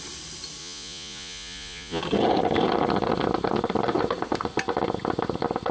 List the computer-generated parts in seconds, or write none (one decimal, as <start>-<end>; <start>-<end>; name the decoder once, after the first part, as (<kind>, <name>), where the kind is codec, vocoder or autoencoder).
0.6-2.0 (vocoder, Vocos)